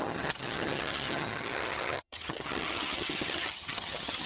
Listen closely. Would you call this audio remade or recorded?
remade